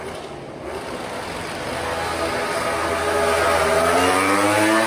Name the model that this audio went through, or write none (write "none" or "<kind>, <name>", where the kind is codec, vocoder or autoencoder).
none